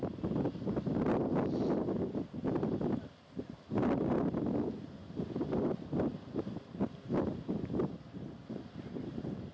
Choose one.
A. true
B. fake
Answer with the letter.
A